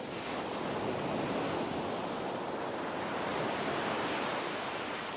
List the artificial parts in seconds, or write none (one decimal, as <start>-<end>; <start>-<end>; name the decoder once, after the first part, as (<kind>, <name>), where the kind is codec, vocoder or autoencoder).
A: none